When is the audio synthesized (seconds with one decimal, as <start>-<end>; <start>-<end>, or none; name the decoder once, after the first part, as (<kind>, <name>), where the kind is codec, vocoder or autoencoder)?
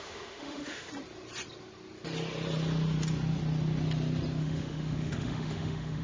0.0-0.9 (autoencoder, DAC-VAE); 4.4-6.0